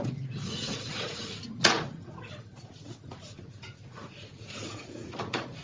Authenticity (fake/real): fake